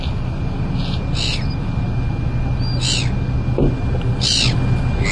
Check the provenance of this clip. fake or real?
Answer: real